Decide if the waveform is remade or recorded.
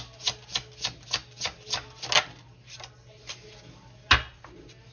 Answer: recorded